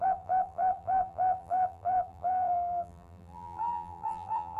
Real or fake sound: fake